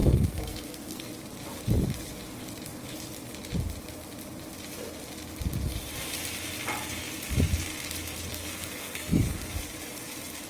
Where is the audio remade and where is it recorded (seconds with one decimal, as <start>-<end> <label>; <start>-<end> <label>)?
0.0-1.1 remade; 1.1-8.3 recorded; 8.3-9.6 remade; 9.6-10.5 recorded